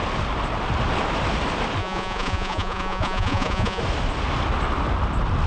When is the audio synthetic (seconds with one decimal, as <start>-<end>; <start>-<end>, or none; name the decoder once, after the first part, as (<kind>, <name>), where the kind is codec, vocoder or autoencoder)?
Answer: 1.8-3.8 (vocoder, Vocos)